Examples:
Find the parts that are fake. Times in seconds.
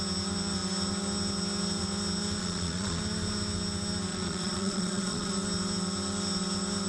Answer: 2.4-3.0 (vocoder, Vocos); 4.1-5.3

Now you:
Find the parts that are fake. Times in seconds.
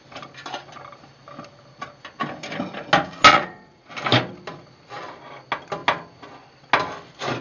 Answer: 3.3-3.9 (vocoder, Vocos)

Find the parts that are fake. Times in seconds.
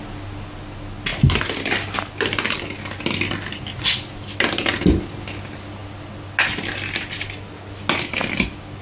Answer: none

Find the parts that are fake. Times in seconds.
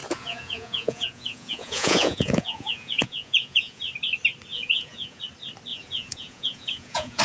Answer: 0.0-3.8 (vocoder, Vocos); 4.5-5.2; 5.7-7.2